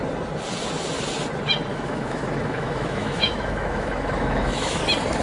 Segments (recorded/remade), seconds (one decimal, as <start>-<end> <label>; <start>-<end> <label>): 0.0-1.7 recorded; 1.7-4.8 remade; 4.8-5.2 recorded